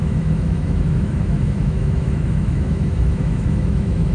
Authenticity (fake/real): fake